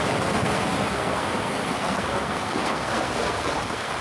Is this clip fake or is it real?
fake